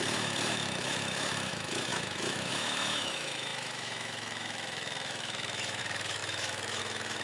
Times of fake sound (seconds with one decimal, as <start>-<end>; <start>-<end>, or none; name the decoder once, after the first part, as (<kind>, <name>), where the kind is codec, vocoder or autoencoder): 0.0-7.2 (autoencoder, DAC-VAE)